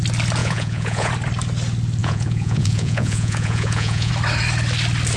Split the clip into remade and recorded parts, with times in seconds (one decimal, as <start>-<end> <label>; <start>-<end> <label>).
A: 0.0-0.4 recorded; 0.4-1.1 remade; 1.1-2.0 recorded; 2.0-4.1 remade; 4.1-5.2 recorded